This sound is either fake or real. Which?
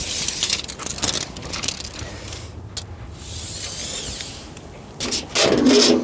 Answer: real